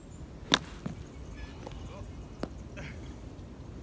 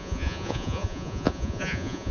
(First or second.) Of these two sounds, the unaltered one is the first